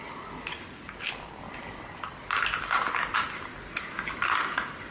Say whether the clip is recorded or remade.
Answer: recorded